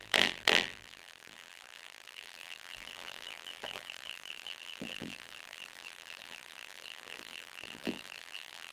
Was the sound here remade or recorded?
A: remade